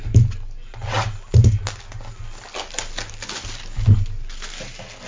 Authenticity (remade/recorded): recorded